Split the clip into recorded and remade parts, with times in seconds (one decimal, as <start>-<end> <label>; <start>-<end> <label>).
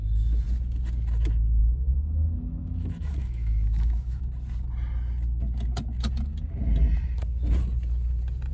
0.0-1.6 recorded; 1.6-4.2 remade; 4.2-8.5 recorded